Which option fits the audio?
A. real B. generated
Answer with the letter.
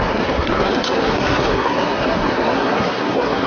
B